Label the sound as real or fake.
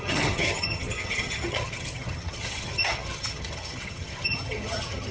fake